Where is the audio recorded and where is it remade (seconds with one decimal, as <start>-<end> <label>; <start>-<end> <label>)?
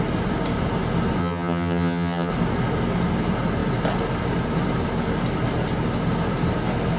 0.0-1.2 recorded; 1.2-2.3 remade; 2.3-7.0 recorded